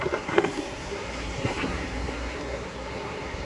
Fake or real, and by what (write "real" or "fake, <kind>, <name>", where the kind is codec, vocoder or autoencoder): fake, codec, SNAC